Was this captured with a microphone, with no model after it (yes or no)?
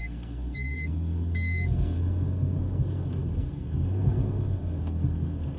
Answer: no